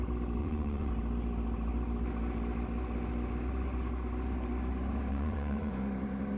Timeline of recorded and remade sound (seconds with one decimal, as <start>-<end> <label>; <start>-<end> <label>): 0.0-0.4 recorded; 0.4-0.9 remade; 0.9-5.1 recorded; 5.1-5.7 remade; 5.7-6.4 recorded